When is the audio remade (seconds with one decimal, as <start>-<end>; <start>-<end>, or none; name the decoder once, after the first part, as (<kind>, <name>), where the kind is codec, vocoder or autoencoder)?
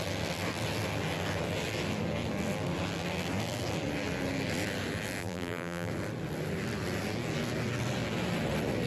5.2-5.9 (vocoder, BigVGAN v2)